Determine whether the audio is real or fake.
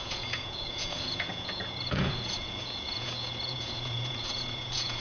fake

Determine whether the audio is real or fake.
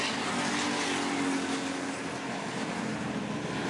real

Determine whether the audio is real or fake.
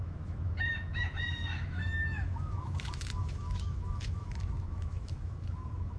fake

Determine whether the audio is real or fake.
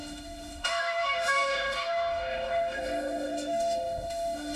fake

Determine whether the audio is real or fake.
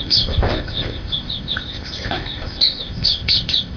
fake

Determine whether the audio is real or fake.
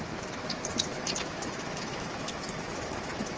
fake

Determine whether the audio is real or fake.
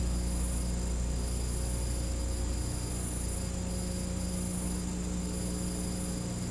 real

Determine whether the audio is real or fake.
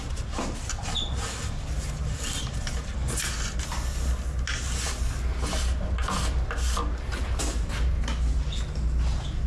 real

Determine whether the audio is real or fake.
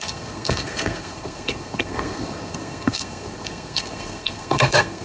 fake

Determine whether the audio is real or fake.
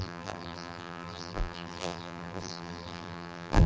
fake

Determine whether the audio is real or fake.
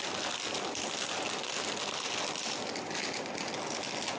real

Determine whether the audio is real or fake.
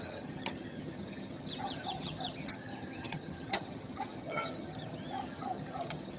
fake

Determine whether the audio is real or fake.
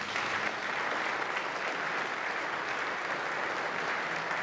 real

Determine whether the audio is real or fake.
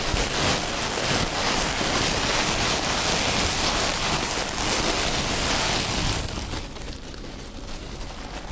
real